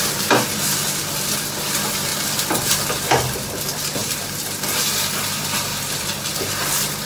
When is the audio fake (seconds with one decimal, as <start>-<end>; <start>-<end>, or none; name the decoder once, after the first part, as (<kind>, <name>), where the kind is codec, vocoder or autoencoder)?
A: none